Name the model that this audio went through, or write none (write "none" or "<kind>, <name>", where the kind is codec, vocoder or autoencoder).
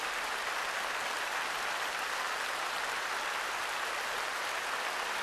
none